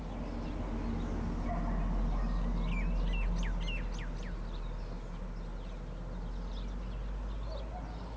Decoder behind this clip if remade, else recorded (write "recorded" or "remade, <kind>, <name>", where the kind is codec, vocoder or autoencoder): recorded